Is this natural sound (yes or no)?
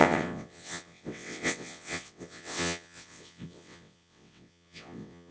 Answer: no